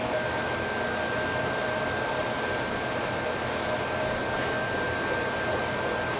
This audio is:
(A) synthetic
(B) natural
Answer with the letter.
B